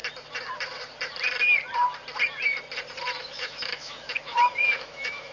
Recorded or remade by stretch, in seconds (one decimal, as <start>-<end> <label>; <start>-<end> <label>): 0.0-3.2 recorded; 3.2-5.3 remade